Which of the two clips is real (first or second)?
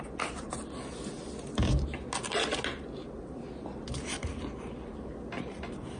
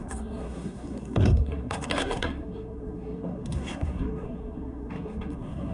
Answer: first